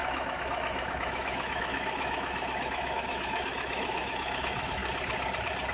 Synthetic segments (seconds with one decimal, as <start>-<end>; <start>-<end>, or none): 0.0-4.8